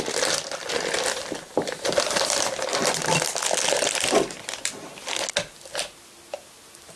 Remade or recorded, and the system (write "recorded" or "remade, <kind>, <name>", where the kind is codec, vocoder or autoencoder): recorded